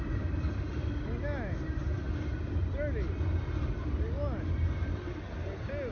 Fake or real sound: real